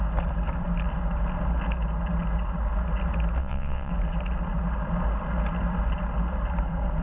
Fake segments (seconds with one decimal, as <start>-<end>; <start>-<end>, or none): 3.4-3.9

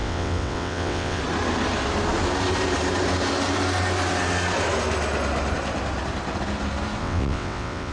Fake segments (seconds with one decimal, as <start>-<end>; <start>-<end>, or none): 0.0-1.2; 7.0-7.9

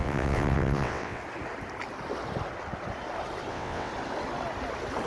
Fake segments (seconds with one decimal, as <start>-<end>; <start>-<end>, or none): 0.0-1.2; 3.5-3.9

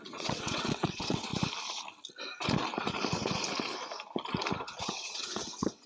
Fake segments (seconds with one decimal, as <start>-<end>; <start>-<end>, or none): 0.0-1.3; 4.8-5.9